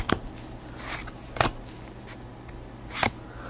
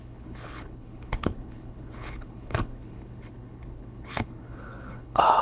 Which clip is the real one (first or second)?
first